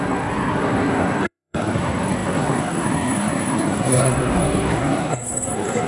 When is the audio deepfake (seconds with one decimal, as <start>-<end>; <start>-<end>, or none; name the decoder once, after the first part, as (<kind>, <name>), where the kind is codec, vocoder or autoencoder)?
0.0-5.9 (codec, SNAC)